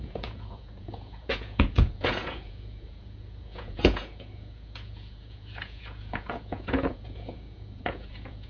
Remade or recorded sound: remade